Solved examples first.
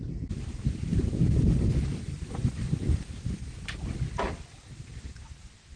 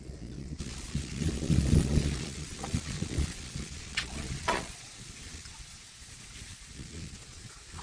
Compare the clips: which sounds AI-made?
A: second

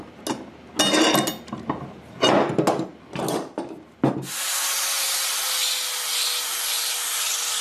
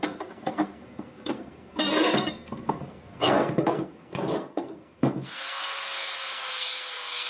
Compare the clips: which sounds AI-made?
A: second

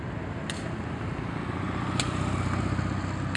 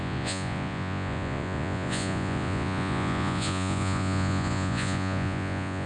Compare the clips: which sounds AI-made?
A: second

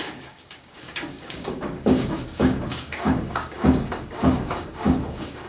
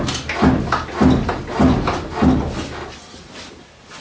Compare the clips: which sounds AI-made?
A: first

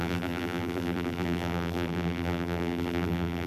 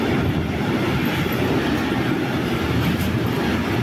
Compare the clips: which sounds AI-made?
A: first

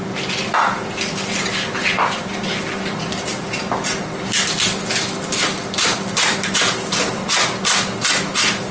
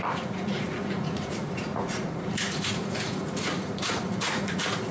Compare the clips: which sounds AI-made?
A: second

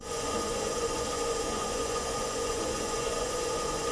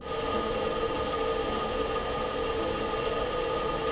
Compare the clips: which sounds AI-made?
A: first